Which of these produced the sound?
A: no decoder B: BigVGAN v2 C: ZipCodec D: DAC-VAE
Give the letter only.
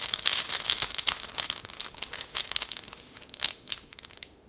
D